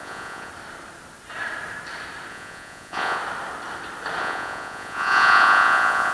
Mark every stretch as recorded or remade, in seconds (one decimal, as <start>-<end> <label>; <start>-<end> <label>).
0.0-0.5 remade; 0.5-2.3 recorded; 2.3-3.2 remade; 3.2-4.2 recorded; 4.2-6.1 remade